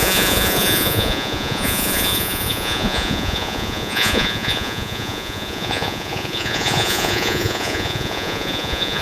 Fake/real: fake